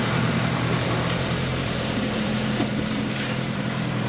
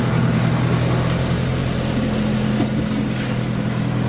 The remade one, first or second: first